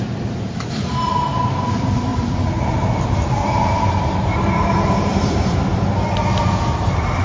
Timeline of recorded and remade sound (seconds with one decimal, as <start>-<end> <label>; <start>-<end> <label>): 0.0-5.7 remade; 5.7-6.7 recorded; 6.7-7.2 remade